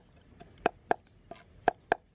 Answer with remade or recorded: recorded